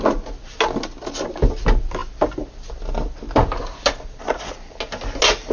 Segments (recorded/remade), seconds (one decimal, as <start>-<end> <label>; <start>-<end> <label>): 0.0-5.5 recorded